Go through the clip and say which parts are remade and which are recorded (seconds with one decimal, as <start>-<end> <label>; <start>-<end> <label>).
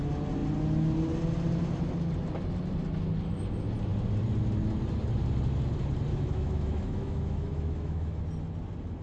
0.0-6.1 recorded; 6.1-8.2 remade; 8.2-9.0 recorded